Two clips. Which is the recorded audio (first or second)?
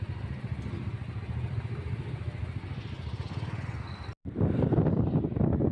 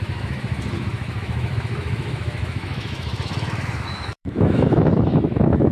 first